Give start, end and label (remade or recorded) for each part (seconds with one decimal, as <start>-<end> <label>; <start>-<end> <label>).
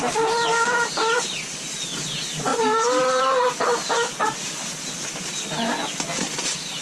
0.0-2.5 recorded; 2.5-5.5 remade; 5.5-6.8 recorded